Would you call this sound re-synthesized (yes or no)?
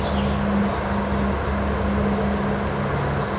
no